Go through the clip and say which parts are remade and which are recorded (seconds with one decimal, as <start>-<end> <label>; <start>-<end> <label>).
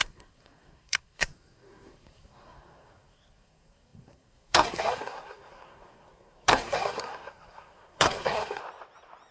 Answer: 0.0-8.6 remade; 8.6-9.3 recorded